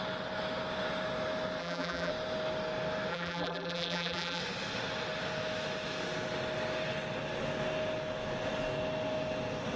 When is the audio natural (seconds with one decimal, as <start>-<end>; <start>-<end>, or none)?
0.0-1.6; 2.1-3.1; 4.4-9.8